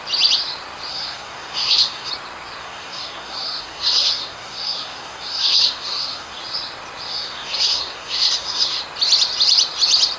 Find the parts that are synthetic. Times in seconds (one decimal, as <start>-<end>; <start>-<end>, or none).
0.9-2.1; 2.6-6.4; 7.1-8.8